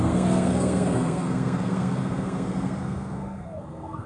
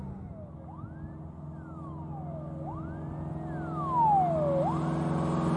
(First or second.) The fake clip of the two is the first